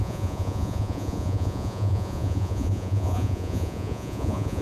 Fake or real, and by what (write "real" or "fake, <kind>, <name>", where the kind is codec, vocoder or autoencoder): fake, vocoder, Vocos